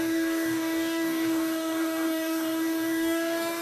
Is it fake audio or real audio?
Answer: fake